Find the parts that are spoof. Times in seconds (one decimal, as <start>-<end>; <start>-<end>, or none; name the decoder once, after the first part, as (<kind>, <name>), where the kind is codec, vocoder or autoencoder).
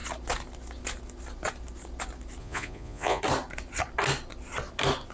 2.4-3.2 (vocoder, Vocos)